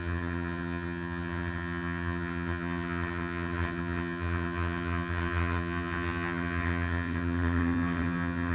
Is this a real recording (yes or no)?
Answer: no